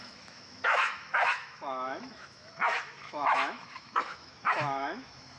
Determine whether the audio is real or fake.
fake